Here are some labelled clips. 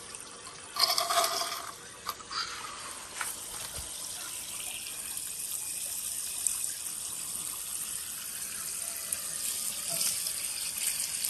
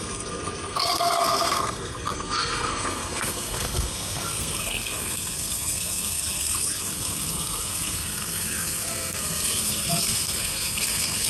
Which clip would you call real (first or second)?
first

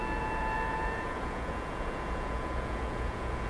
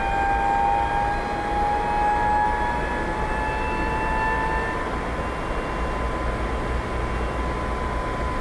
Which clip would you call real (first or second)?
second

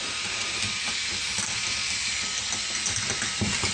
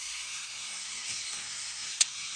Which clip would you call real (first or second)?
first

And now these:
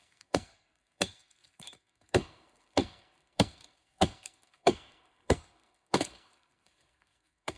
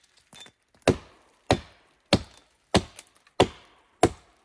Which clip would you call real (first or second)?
second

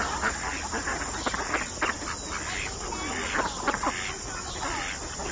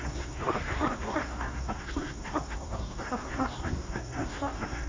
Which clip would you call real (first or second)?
first